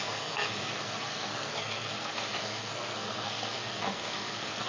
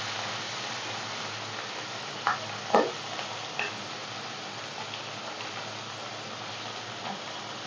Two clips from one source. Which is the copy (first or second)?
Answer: first